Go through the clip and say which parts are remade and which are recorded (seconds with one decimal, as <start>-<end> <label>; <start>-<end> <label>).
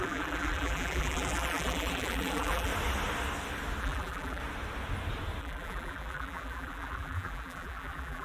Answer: 0.0-2.7 remade; 2.7-3.8 recorded; 3.8-4.4 remade; 4.4-5.4 recorded; 5.4-8.2 remade